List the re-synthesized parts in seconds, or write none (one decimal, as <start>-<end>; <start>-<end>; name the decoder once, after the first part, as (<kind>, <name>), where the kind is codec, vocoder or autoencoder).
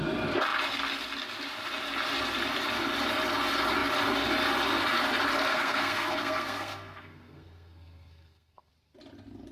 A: 5.5-8.7 (codec, SNAC)